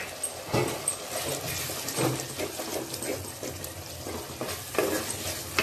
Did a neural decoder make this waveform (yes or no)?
no